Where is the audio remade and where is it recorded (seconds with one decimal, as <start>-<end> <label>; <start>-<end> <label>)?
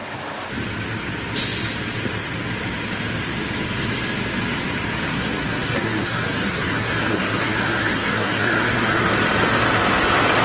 0.0-5.1 recorded; 5.1-9.1 remade; 9.1-10.4 recorded